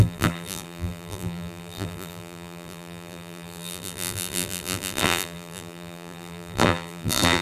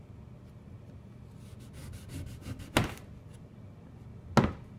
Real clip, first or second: second